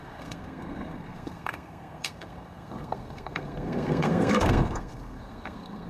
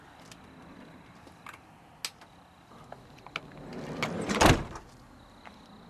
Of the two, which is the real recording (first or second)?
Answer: second